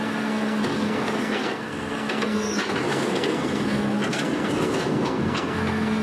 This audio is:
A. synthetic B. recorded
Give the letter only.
A